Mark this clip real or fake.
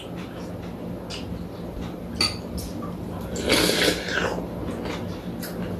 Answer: real